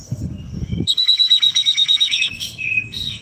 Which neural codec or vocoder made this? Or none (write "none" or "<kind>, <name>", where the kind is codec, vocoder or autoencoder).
codec, SNAC